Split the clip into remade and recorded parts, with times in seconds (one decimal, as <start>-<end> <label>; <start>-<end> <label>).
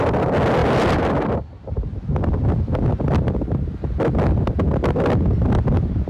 0.0-6.1 recorded